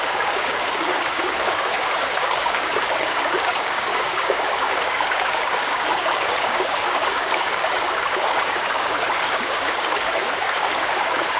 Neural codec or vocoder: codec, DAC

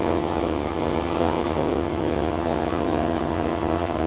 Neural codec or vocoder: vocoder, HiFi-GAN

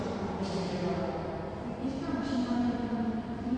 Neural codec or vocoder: none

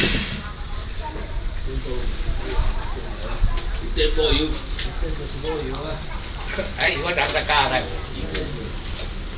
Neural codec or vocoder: none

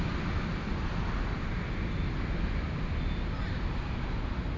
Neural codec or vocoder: none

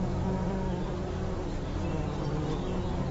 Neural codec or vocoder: none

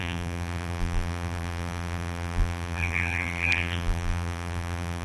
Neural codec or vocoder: vocoder, BigVGAN v2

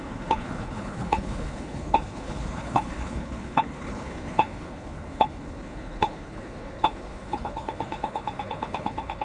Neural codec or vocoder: codec, HILCodec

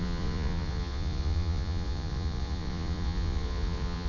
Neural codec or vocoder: vocoder, Vocos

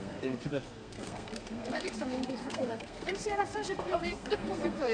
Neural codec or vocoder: codec, SNAC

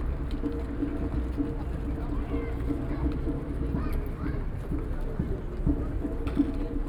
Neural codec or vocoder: none